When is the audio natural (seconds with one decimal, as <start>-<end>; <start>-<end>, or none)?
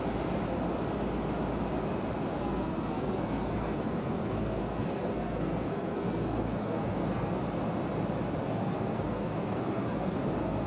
0.0-2.4; 7.4-8.4